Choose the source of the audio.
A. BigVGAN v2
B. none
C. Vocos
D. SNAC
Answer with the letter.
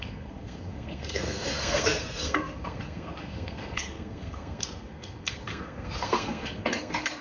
D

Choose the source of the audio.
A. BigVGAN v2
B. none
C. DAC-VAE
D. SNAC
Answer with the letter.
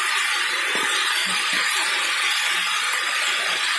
B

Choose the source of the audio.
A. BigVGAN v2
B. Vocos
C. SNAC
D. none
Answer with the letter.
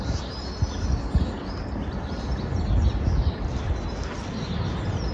D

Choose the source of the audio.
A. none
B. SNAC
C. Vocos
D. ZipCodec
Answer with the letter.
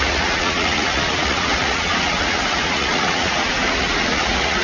C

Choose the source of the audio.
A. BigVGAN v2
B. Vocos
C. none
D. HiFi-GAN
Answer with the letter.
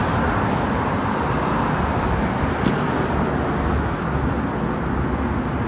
C